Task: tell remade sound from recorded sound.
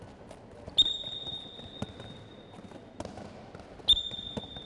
recorded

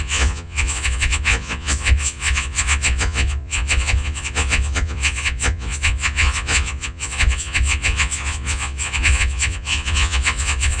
remade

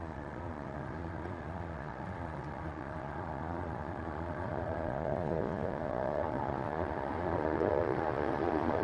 remade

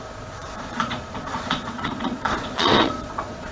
remade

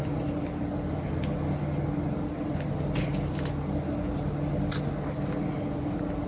recorded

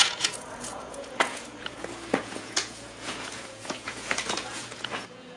remade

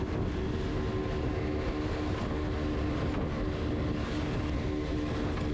recorded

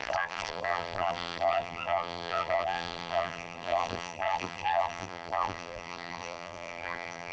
remade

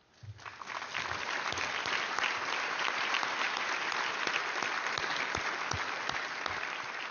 recorded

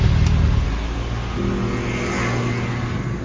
recorded